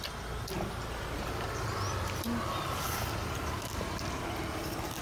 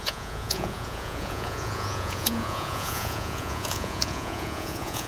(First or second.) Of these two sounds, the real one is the first